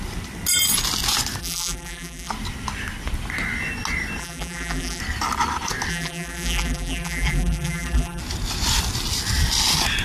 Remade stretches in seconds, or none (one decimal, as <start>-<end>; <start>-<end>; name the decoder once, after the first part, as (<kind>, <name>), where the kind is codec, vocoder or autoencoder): 1.4-2.3 (vocoder, BigVGAN v2); 4.2-5.0; 5.9-8.2